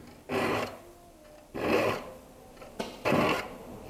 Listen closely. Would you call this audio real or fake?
real